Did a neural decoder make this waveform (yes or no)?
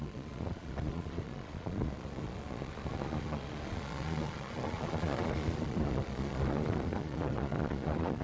yes